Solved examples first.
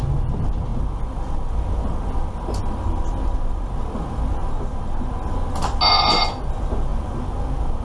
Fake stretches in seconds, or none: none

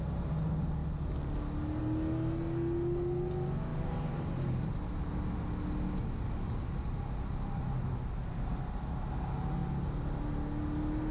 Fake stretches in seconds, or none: 3.7-4.7 (vocoder, BigVGAN v2)

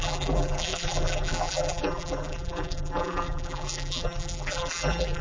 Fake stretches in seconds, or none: 0.0-5.2 (vocoder, BigVGAN v2)

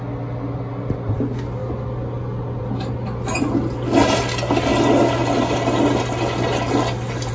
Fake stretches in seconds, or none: none

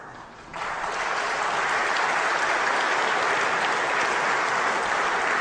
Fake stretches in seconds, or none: 0.5-3.7 (vocoder, BigVGAN v2)

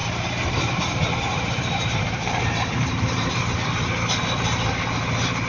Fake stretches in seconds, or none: 0.0-3.3 (vocoder, BigVGAN v2)